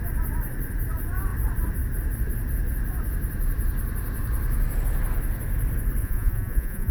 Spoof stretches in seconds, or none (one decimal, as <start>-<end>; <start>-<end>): 6.0-6.9